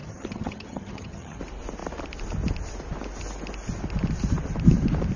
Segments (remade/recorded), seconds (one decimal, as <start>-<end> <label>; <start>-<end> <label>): 0.0-1.4 remade; 1.4-5.2 recorded